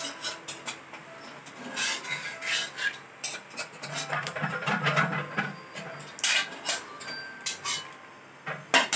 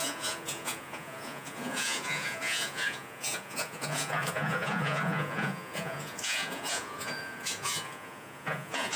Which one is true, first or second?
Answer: first